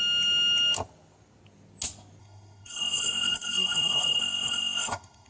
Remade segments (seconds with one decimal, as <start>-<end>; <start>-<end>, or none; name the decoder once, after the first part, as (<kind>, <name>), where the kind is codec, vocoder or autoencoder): 2.2-5.3 (codec, SNAC)